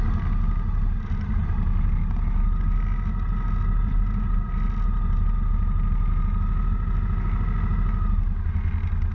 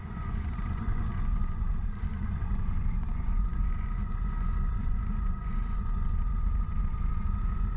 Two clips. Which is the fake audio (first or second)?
second